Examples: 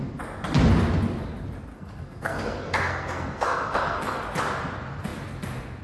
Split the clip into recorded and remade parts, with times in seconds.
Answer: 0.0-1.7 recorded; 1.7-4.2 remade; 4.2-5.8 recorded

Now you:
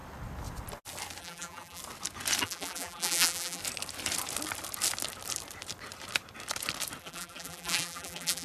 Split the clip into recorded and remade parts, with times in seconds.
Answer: 0.0-1.2 recorded; 1.2-1.8 remade; 1.8-2.4 recorded; 2.4-3.6 remade; 3.6-7.0 recorded; 7.0-8.4 remade

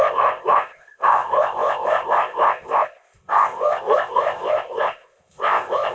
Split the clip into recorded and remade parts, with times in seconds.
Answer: 0.0-5.9 remade

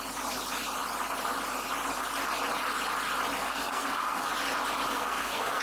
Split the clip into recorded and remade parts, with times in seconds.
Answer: 0.0-3.4 recorded; 3.4-4.3 remade; 4.3-4.9 recorded; 4.9-5.6 remade